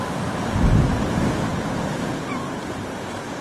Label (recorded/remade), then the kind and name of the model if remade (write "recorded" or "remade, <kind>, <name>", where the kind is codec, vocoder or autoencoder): recorded